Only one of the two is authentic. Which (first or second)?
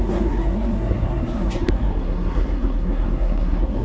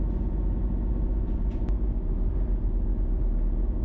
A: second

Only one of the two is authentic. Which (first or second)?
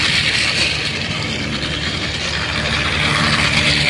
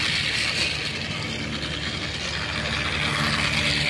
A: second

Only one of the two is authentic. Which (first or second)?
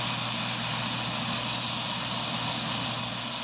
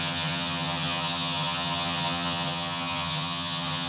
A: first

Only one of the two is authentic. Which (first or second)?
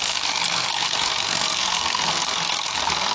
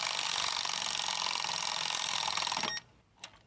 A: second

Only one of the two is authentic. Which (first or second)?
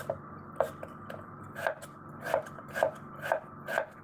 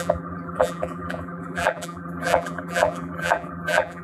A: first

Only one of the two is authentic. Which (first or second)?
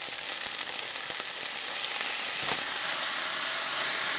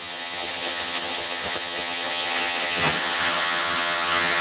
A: first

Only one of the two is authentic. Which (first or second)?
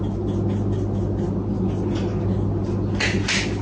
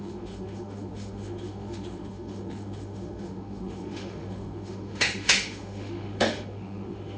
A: first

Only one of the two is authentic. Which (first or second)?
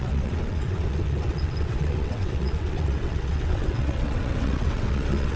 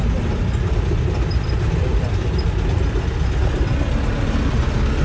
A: second